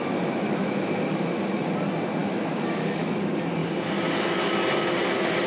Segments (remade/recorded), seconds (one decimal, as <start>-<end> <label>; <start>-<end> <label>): 0.0-1.7 remade; 1.7-2.2 recorded; 2.2-3.2 remade; 3.2-5.5 recorded